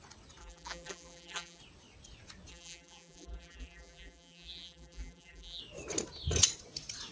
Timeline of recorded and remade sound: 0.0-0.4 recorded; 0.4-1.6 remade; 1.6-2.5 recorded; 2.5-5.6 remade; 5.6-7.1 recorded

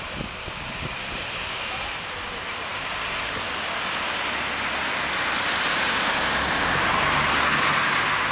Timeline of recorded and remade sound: 0.0-8.3 recorded

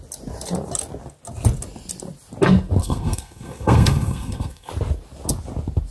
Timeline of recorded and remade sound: 0.0-2.8 recorded; 2.8-4.7 remade; 4.7-5.9 recorded

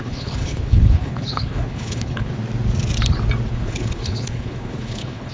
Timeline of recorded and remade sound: 0.0-2.3 remade; 2.3-3.5 recorded; 3.5-5.3 remade

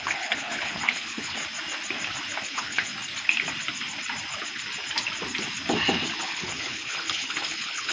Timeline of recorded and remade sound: 0.0-1.4 remade; 1.4-2.5 recorded; 2.5-2.9 remade; 2.9-6.2 recorded; 6.2-7.9 remade

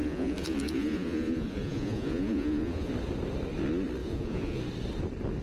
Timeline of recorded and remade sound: 0.0-2.9 remade; 2.9-4.0 recorded; 4.0-4.6 remade; 4.6-5.4 recorded

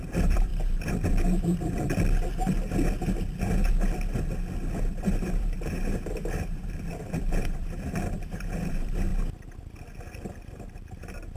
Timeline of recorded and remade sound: 0.0-0.5 remade; 0.5-4.8 recorded; 4.8-9.1 remade; 9.1-10.5 recorded; 10.5-11.4 remade